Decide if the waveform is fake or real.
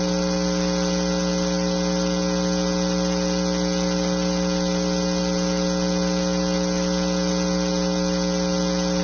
real